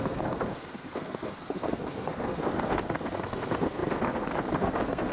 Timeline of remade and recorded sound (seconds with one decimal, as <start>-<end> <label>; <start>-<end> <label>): 0.0-5.1 remade